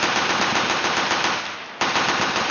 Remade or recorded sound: recorded